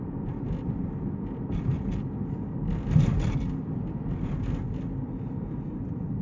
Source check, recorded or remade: recorded